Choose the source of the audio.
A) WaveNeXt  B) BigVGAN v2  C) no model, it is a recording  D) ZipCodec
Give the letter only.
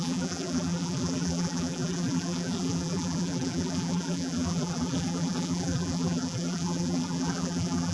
B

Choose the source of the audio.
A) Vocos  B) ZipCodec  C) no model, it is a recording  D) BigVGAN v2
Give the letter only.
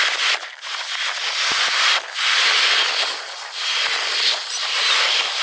C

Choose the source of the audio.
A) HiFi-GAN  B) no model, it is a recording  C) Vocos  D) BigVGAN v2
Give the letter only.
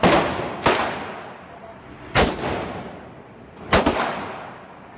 B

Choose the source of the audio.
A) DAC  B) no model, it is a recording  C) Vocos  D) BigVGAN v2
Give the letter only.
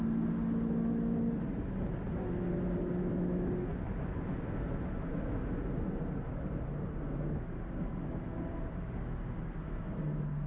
B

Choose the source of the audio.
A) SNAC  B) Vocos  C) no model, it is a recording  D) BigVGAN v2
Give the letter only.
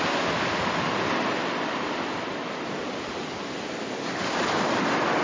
C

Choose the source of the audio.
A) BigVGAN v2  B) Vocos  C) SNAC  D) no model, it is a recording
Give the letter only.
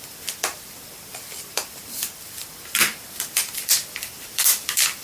A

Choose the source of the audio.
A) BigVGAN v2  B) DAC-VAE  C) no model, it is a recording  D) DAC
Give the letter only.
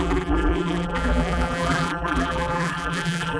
A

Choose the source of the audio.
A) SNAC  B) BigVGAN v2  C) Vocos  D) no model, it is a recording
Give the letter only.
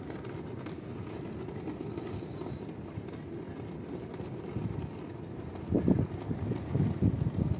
D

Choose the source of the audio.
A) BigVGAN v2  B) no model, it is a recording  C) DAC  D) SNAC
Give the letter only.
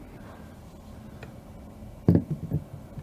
B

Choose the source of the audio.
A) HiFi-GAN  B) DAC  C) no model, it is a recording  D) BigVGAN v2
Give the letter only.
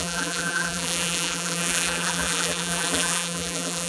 D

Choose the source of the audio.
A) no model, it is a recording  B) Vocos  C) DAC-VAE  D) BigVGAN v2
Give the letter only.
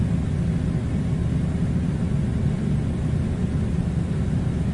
A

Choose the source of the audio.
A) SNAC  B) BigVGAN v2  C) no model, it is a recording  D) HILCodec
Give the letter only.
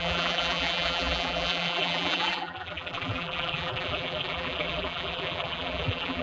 B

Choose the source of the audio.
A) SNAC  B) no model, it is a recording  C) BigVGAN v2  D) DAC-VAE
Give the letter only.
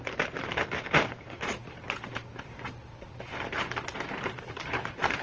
C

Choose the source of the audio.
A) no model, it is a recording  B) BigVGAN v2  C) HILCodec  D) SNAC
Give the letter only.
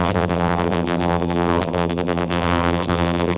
B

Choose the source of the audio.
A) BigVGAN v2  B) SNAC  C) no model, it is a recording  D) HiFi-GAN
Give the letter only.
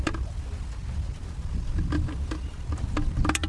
C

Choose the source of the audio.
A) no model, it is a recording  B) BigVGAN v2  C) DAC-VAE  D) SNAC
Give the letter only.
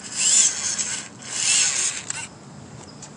A